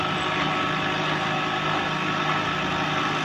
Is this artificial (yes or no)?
no